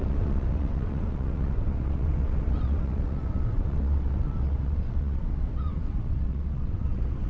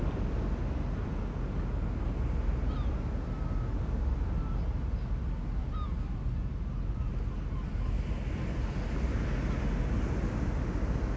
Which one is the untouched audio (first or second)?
second